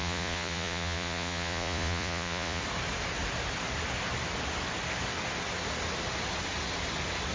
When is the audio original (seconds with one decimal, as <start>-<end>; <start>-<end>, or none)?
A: 2.6-7.3